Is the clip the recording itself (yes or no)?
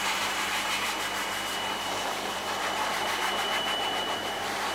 no